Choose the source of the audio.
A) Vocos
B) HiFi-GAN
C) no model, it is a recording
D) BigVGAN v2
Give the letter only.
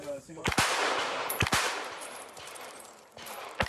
D